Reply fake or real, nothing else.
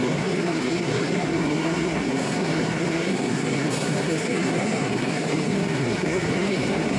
fake